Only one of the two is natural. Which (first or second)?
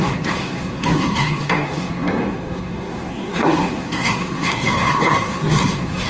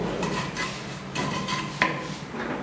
second